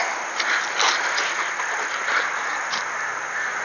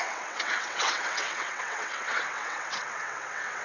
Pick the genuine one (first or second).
first